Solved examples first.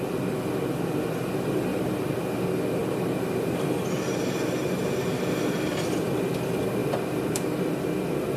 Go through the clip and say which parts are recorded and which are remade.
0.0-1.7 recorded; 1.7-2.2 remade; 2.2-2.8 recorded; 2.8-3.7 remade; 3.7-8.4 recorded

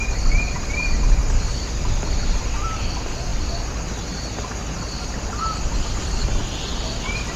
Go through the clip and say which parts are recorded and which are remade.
0.0-1.2 recorded; 1.2-1.7 remade; 1.7-7.4 recorded

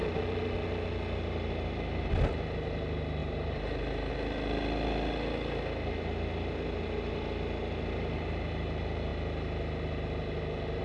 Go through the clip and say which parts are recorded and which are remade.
0.0-3.2 recorded; 3.2-4.1 remade; 4.1-10.8 recorded

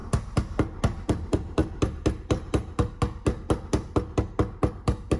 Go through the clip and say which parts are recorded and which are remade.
0.0-0.8 recorded; 0.8-1.6 remade; 1.6-4.7 recorded; 4.7-5.2 remade

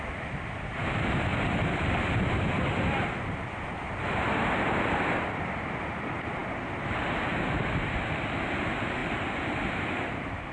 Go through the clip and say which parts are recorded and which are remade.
0.0-1.3 recorded; 1.3-2.7 remade; 2.7-9.0 recorded; 9.0-10.5 remade

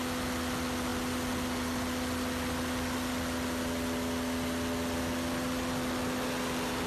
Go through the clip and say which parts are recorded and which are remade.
0.0-6.9 recorded